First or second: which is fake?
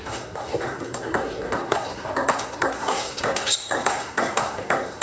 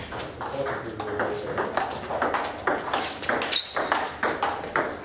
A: first